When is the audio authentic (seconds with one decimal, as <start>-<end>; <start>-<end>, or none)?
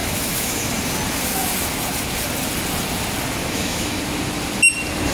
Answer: 0.7-3.4; 4.0-5.1